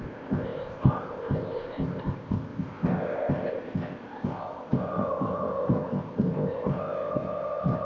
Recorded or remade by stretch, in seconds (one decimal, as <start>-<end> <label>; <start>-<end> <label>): 0.0-7.8 remade